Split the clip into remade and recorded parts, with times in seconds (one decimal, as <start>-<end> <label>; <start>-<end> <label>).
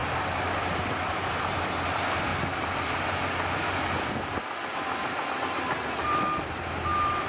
0.0-5.0 remade; 5.0-6.0 recorded; 6.0-7.3 remade